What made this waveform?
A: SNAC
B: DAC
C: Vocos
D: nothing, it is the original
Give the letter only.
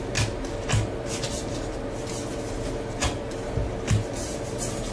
D